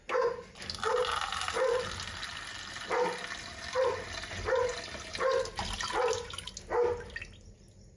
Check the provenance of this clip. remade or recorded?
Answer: recorded